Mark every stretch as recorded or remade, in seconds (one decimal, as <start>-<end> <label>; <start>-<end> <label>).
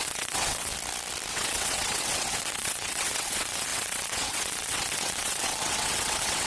0.0-0.7 remade; 0.7-1.3 recorded; 1.3-6.5 remade